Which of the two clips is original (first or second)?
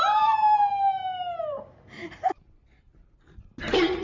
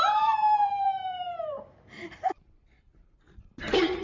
first